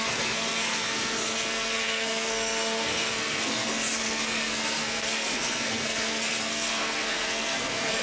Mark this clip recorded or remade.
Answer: remade